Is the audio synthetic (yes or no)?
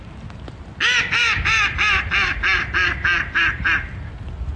no